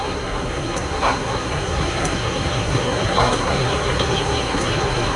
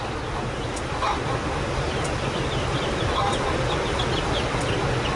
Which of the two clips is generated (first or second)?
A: first